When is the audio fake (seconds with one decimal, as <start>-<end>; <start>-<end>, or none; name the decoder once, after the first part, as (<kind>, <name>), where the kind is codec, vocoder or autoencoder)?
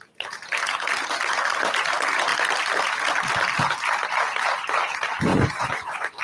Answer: 5.3-6.2 (vocoder, Vocos)